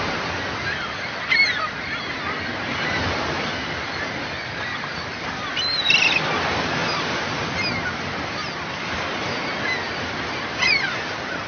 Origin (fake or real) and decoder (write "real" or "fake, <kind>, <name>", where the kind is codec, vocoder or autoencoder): real